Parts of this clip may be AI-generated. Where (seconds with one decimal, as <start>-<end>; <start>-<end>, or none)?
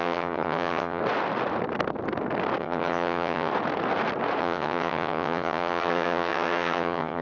0.0-1.0; 2.6-3.5; 4.4-7.2